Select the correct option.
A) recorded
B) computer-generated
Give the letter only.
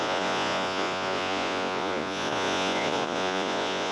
B